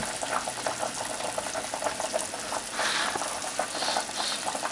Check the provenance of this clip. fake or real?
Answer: real